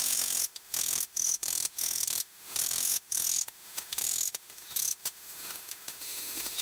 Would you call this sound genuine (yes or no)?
no